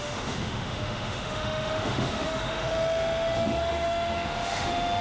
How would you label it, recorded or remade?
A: remade